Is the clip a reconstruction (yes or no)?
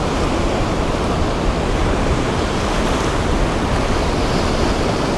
no